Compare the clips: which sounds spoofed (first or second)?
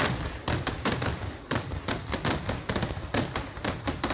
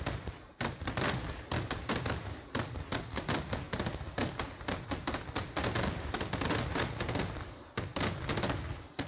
first